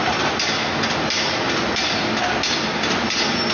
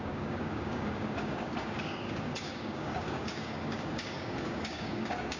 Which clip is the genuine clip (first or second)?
first